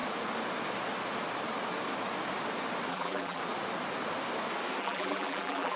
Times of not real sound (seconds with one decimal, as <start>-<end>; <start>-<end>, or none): 2.9-3.4; 4.8-5.8